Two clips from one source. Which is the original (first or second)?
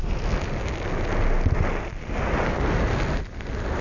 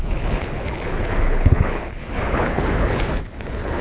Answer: first